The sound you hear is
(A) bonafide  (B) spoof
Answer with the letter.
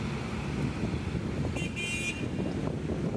A